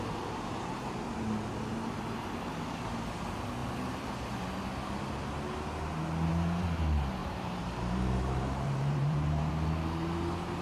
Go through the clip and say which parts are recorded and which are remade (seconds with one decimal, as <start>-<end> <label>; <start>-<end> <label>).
0.0-7.2 recorded; 7.2-9.5 remade; 9.5-10.6 recorded